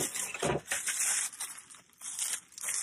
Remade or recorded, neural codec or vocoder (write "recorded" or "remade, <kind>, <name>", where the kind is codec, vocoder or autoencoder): recorded